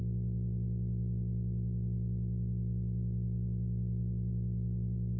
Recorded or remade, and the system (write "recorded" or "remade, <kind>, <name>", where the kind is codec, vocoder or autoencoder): recorded